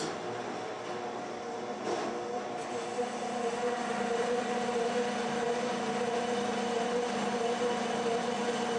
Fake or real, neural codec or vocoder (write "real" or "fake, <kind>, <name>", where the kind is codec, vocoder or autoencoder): real